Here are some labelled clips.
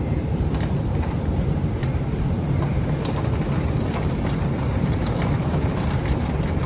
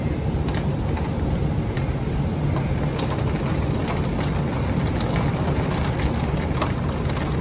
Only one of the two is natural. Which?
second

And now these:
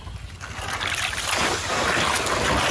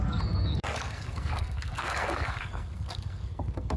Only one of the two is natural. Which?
first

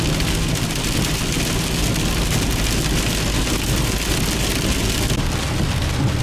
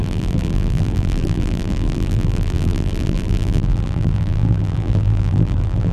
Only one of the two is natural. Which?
first